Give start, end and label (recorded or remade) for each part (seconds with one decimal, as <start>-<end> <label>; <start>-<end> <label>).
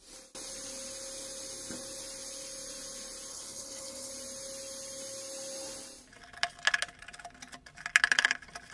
0.0-3.3 recorded; 3.3-4.1 remade; 4.1-8.7 recorded